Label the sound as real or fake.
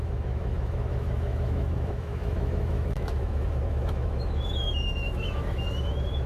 fake